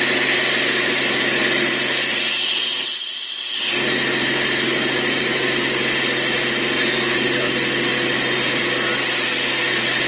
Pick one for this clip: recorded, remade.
recorded